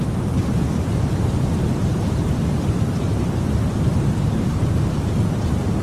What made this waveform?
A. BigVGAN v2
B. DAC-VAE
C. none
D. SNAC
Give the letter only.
A